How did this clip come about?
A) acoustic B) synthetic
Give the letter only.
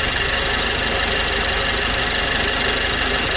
A